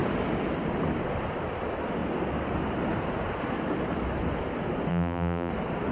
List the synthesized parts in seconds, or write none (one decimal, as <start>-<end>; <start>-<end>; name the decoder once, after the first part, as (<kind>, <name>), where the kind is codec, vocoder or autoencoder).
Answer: 4.9-5.5 (vocoder, BigVGAN v2)